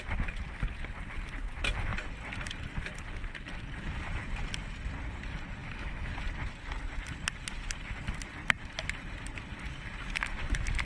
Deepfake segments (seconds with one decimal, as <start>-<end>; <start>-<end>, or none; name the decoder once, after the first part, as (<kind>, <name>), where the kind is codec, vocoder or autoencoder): 5.6-6.1 (autoencoder, DAC-VAE)